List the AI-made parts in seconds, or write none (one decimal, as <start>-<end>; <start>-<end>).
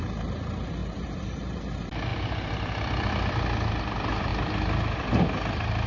0.8-1.6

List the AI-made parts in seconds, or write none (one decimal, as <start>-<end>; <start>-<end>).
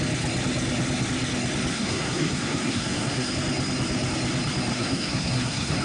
1.7-3.3; 4.7-5.8